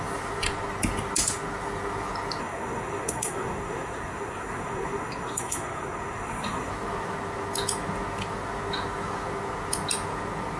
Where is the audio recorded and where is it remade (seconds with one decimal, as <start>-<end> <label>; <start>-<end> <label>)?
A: 0.0-2.4 recorded; 2.4-6.7 remade; 6.7-10.6 recorded